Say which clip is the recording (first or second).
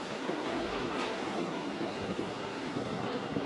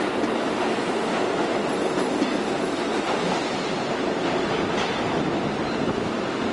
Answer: second